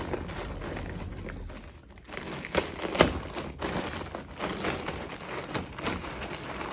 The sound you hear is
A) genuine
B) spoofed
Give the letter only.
A